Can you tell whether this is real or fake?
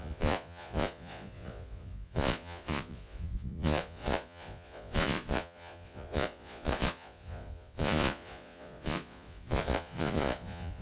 fake